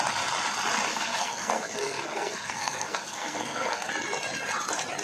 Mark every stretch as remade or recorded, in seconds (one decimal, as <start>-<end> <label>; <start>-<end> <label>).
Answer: 0.0-0.9 recorded; 0.9-3.9 remade; 3.9-5.0 recorded